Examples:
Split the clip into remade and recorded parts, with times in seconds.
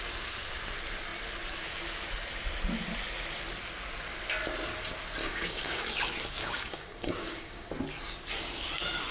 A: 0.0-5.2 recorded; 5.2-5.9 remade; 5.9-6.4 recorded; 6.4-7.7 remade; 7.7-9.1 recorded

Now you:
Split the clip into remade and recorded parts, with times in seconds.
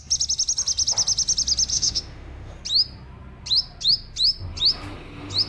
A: 0.0-1.7 recorded; 1.7-2.5 remade; 2.5-5.5 recorded